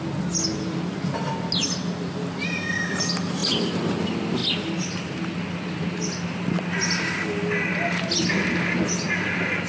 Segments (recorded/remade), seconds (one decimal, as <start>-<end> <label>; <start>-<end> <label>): 0.0-9.7 recorded